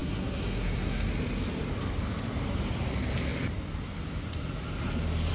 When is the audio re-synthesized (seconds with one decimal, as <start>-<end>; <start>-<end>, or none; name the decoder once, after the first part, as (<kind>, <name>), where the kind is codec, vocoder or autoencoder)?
0.0-1.1 (codec, SNAC)